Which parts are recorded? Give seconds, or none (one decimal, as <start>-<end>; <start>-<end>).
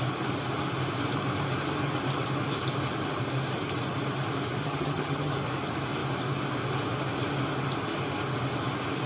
0.0-4.6; 5.3-9.1